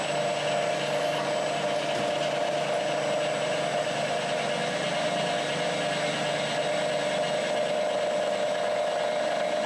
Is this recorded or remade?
recorded